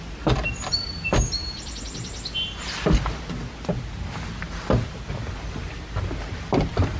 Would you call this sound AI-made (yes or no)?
no